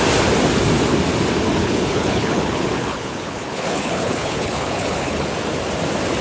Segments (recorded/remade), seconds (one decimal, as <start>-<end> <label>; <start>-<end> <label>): 0.0-1.6 recorded; 1.6-5.3 remade; 5.3-6.2 recorded